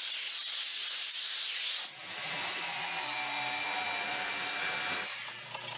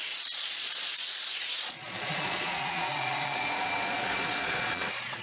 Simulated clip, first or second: second